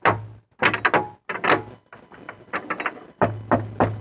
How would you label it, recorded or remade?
recorded